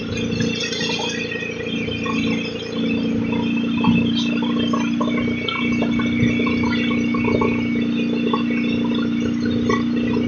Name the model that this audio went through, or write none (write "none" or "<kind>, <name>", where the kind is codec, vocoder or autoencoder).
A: none